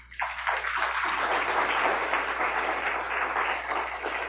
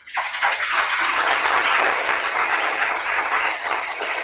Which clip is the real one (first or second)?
first